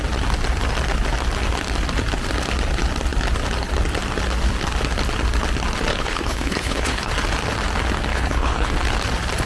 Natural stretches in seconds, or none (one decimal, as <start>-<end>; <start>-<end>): 0.0-5.9; 7.1-8.1; 8.7-9.5